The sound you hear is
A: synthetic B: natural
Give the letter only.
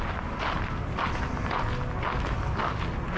B